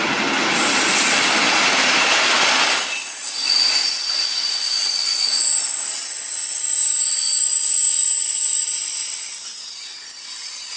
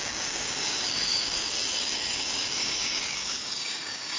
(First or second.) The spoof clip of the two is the second